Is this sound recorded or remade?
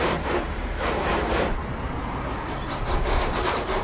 remade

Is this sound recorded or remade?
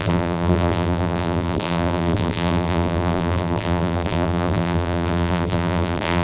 remade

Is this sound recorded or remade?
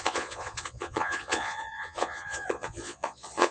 remade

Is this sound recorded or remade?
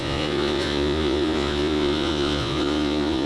remade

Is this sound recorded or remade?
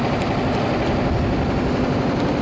recorded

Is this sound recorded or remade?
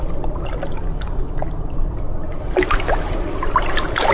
recorded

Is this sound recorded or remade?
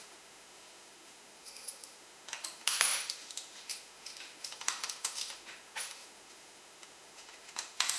remade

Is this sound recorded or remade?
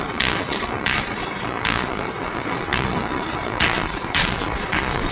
remade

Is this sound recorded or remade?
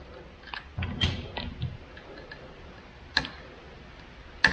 recorded